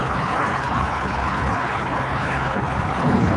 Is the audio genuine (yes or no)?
no